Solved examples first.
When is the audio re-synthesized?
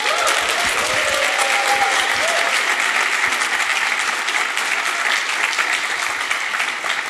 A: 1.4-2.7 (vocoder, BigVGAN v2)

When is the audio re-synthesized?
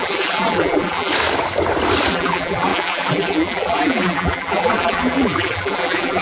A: 0.0-1.1 (vocoder, BigVGAN v2); 2.1-6.2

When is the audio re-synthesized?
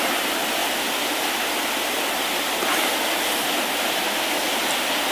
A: none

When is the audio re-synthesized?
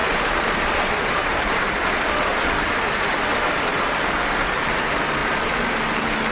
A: 0.0-2.4 (vocoder, BigVGAN v2); 3.3-4.0; 5.2-5.7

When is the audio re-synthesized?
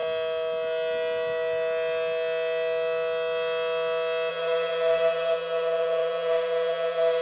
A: 4.3-7.2 (vocoder, BigVGAN v2)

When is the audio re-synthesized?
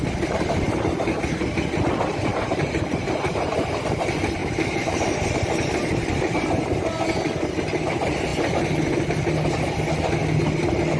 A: 2.3-4.0 (vocoder, BigVGAN v2); 4.4-5.0